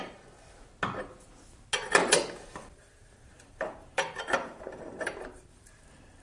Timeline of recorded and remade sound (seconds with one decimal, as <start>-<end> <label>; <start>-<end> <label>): 0.0-2.0 recorded; 2.0-5.7 remade; 5.7-6.2 recorded